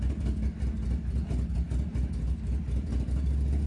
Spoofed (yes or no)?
no